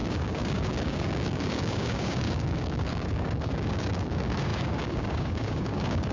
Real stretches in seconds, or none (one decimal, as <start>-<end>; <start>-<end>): none